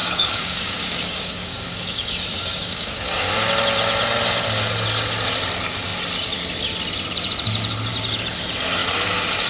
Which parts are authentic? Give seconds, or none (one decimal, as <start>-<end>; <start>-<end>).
3.3-9.5